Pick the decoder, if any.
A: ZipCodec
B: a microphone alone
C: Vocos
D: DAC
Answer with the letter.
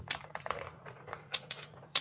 C